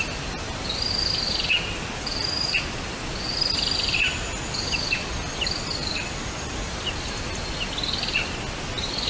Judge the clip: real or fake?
real